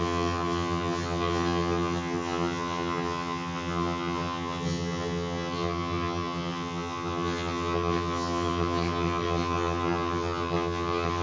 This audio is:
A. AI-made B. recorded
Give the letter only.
A